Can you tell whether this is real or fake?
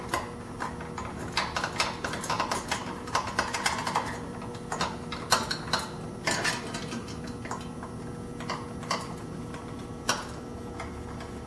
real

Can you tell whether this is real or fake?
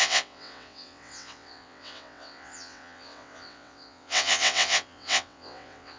fake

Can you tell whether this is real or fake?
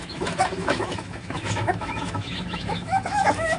fake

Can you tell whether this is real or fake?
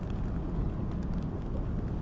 real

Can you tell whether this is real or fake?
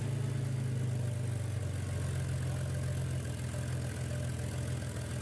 real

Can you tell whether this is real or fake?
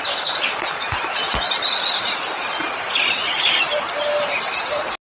real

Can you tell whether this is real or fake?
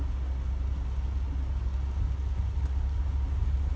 real